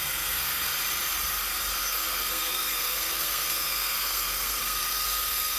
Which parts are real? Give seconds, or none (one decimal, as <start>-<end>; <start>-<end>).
0.7-1.8